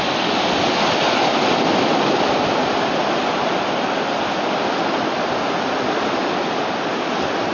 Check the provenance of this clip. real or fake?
real